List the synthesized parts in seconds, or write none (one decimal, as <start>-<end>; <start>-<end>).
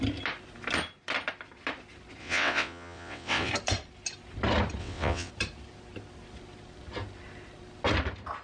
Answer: 2.2-3.5; 4.8-5.3